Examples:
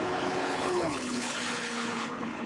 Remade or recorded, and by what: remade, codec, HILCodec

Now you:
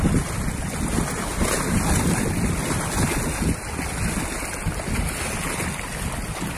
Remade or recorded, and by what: recorded